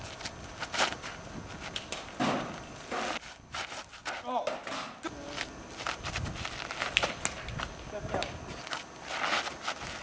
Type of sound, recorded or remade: recorded